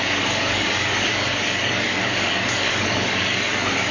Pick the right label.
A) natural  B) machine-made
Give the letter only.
B